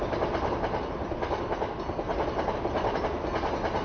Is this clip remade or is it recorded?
recorded